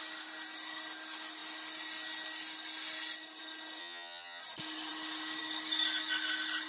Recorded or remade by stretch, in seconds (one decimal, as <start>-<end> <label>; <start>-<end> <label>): 0.0-3.8 recorded; 3.8-4.4 remade; 4.4-6.7 recorded